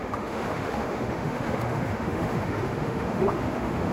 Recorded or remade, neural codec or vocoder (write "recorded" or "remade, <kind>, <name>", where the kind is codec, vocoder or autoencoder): remade, autoencoder, DAC-VAE